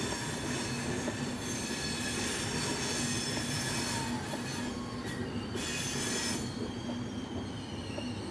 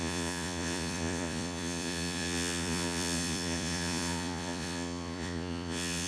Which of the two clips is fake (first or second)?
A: second